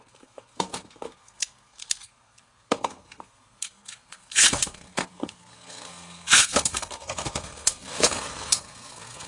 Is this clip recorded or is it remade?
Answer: remade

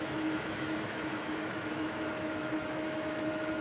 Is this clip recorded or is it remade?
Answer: remade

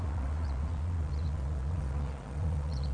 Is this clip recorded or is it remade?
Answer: remade